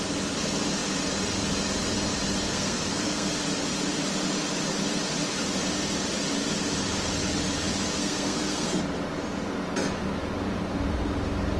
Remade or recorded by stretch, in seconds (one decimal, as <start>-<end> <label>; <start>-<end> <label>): 0.0-2.5 recorded; 2.5-3.3 remade; 3.3-8.0 recorded; 8.0-8.8 remade; 8.8-11.6 recorded